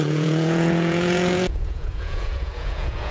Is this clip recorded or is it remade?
remade